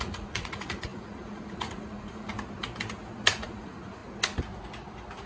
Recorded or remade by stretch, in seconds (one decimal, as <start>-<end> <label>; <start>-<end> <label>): 0.0-2.3 remade; 2.3-3.4 recorded; 3.4-4.0 remade; 4.0-5.3 recorded